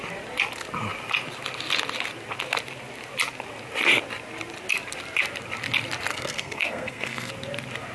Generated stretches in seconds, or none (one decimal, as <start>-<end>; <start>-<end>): 6.1-7.3